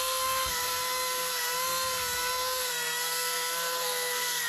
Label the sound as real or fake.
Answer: fake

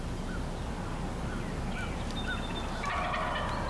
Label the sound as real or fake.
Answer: real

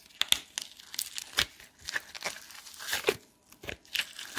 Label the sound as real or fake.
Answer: real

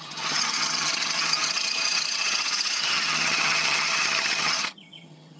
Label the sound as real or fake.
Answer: fake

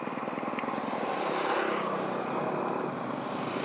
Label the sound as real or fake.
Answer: real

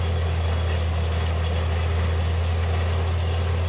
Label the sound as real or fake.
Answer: real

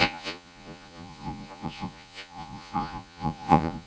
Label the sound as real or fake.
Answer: fake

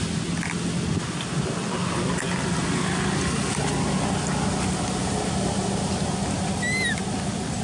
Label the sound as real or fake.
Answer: real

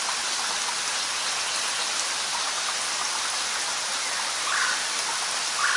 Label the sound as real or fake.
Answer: real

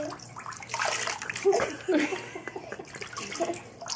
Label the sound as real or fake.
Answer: real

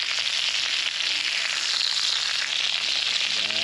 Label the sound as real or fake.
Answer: real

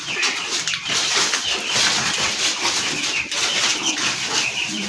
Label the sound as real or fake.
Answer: real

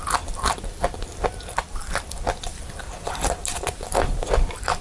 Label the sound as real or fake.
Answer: real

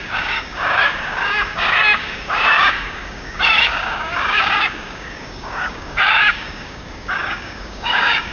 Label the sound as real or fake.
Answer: fake